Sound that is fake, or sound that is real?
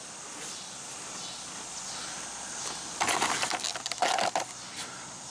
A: real